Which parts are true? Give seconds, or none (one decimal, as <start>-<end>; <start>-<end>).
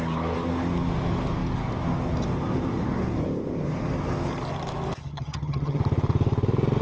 0.0-5.0; 5.8-6.8